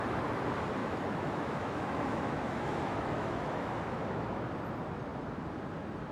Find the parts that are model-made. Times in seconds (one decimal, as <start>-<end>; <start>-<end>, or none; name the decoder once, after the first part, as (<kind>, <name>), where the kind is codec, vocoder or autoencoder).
0.8-4.5 (autoencoder, DAC-VAE)